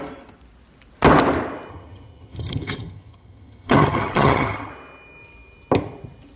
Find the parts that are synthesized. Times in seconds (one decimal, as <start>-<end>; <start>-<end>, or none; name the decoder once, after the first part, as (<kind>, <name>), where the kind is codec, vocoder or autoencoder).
1.7-4.7 (vocoder, HiFi-GAN)